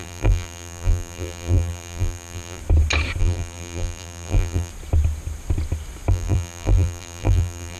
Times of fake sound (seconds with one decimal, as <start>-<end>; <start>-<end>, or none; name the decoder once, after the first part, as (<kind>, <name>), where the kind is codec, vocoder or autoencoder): 0.0-2.6 (vocoder, BigVGAN v2); 3.2-4.7; 6.1-7.8